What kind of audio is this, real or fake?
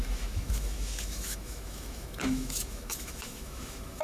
fake